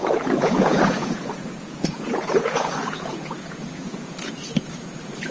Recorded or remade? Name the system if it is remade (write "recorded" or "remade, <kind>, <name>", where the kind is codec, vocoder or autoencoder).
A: remade, vocoder, Vocos